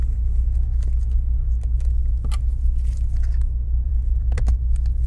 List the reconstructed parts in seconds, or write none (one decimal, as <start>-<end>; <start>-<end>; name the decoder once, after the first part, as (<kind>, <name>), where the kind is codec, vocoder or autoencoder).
none